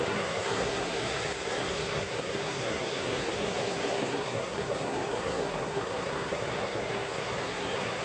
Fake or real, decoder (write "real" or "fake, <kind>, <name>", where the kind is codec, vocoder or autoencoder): fake, codec, SNAC